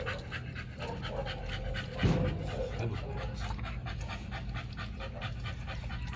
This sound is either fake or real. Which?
real